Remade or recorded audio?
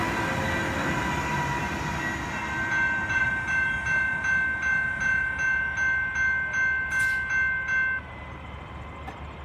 recorded